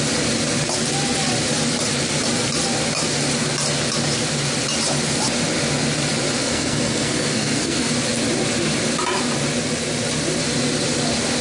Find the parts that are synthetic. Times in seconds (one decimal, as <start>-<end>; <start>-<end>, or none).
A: 6.4-7.9